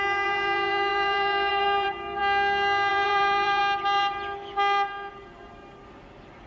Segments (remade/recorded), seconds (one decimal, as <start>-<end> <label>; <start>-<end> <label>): 0.0-2.2 remade; 2.2-2.9 recorded; 2.9-3.6 remade; 3.6-5.1 recorded; 5.1-6.5 remade